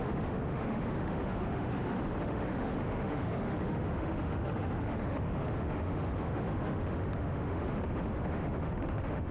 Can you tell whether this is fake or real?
fake